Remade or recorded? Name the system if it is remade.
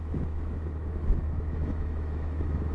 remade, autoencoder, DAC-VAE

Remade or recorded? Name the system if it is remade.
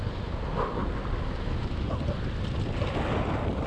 recorded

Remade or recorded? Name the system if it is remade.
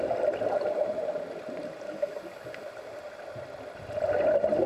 recorded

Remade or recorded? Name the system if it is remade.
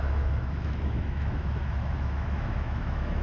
remade, autoencoder, DAC-VAE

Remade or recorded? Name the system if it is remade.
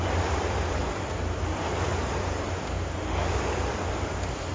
recorded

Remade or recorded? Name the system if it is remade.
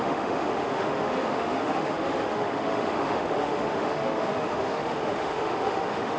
remade, autoencoder, DAC-VAE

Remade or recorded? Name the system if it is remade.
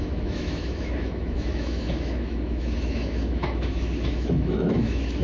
remade, autoencoder, DAC-VAE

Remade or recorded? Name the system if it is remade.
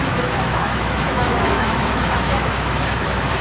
remade, autoencoder, DAC-VAE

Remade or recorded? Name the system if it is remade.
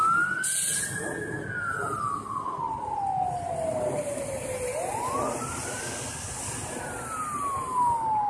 recorded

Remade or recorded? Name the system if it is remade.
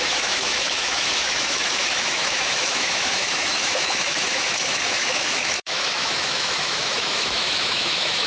remade, autoencoder, DAC-VAE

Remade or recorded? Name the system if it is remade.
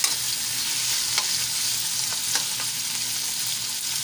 recorded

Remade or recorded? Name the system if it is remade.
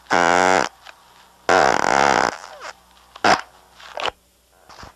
recorded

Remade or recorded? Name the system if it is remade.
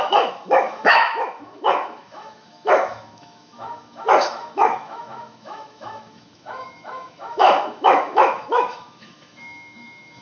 remade, autoencoder, DAC-VAE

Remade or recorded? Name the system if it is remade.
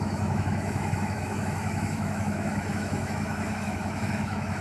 remade, autoencoder, DAC-VAE